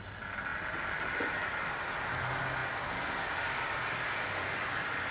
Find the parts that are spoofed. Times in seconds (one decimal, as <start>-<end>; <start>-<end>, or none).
none